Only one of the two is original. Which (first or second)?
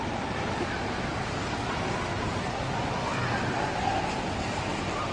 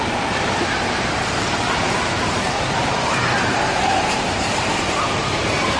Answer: first